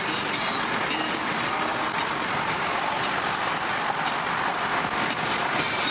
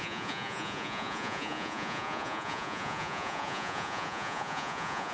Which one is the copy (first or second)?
second